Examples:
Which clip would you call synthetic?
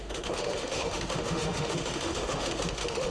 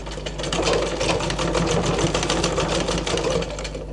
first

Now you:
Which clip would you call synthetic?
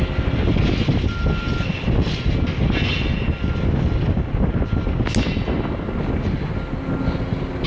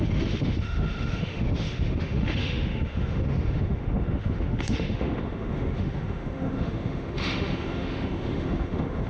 second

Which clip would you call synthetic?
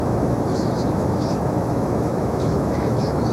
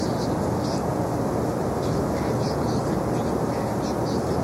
first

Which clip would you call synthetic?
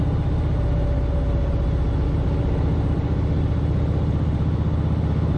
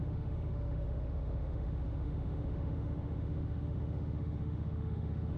second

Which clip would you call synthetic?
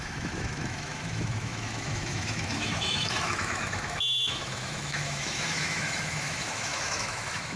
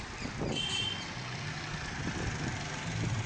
first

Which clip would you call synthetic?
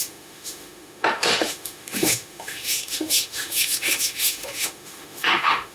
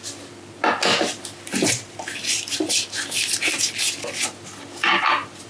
first